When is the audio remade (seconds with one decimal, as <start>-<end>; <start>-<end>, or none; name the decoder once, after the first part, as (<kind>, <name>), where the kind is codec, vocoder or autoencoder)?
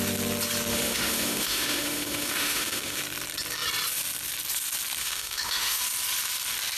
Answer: 0.7-3.0 (autoencoder, DAC-VAE); 5.0-5.8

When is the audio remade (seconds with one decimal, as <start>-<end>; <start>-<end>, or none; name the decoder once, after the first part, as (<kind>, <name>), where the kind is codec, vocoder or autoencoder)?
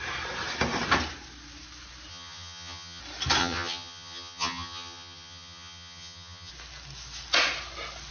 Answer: 2.1-3.0 (vocoder, HiFi-GAN); 3.4-6.5